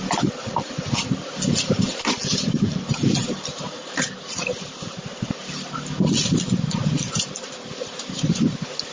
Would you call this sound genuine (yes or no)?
yes